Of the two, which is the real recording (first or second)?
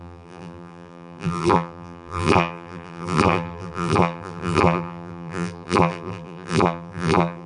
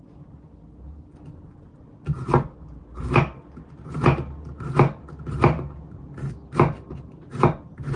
second